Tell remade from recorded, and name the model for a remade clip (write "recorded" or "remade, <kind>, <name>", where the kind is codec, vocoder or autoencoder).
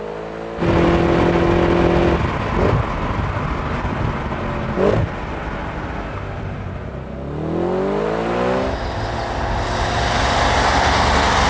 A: recorded